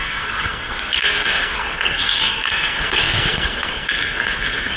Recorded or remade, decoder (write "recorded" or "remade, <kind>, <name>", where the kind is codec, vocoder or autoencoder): remade, codec, SNAC